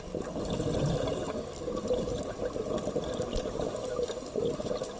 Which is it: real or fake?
real